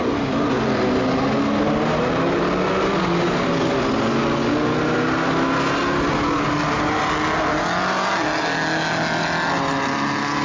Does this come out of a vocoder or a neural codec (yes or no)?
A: no